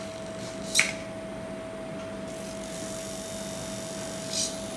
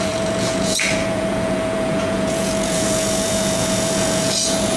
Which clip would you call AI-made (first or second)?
second